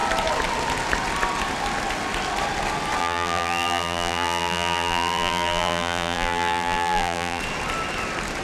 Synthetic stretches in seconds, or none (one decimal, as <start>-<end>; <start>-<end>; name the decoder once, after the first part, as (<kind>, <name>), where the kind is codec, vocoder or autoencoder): 3.0-7.4 (vocoder, BigVGAN v2)